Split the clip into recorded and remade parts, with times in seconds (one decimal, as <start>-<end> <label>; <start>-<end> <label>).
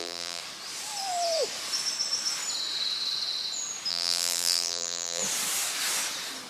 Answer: 0.0-0.4 remade; 0.4-3.9 recorded; 3.9-5.2 remade; 5.2-6.5 recorded